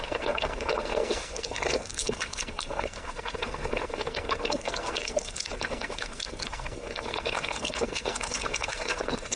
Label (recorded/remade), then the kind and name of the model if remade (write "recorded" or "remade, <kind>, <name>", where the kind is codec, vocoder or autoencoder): remade, codec, SNAC